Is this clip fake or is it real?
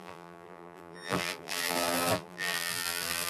fake